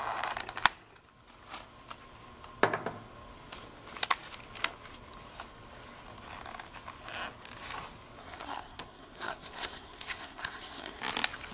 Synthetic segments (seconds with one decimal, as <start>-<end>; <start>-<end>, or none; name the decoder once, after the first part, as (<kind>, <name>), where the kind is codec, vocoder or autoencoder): 8.2-11.0 (codec, SNAC)